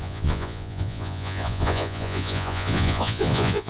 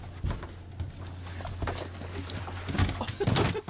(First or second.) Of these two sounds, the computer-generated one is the first